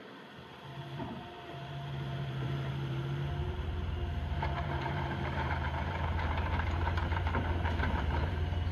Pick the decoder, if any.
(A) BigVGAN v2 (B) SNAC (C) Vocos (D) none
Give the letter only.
A